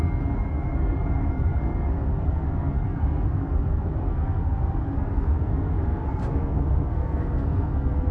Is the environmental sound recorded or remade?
remade